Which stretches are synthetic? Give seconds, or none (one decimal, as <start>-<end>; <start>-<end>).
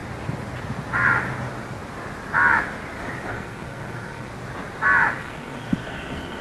3.3-4.3; 5.1-6.4